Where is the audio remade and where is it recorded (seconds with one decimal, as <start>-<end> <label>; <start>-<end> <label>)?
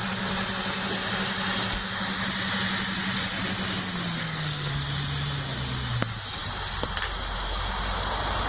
0.0-4.2 recorded; 4.2-4.9 remade; 4.9-8.5 recorded